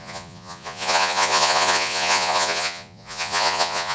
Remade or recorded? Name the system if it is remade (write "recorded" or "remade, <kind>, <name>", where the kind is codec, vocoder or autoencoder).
remade, vocoder, Vocos